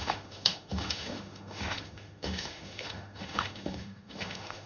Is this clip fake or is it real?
fake